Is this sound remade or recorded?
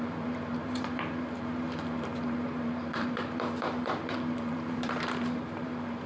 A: remade